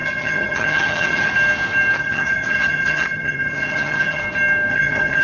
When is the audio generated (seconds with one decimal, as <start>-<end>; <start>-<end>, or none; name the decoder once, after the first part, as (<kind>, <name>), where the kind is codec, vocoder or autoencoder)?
0.0-1.3 (vocoder, HiFi-GAN); 2.0-4.2; 4.7-5.2